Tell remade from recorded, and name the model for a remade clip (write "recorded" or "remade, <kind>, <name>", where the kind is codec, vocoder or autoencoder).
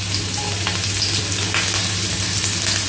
recorded